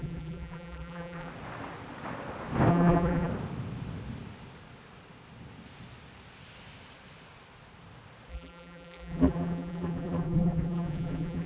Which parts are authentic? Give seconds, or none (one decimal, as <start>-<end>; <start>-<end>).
1.3-2.7; 3.3-8.3